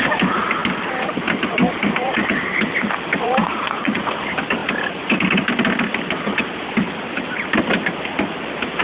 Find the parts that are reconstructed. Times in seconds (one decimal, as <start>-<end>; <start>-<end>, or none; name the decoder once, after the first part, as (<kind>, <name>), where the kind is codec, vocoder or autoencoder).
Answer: 3.4-4.1 (vocoder, Vocos)